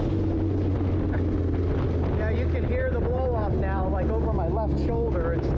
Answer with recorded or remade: recorded